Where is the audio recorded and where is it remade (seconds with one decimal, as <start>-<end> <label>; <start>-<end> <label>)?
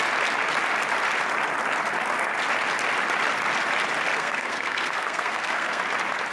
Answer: 0.0-4.1 recorded; 4.1-5.8 remade; 5.8-6.3 recorded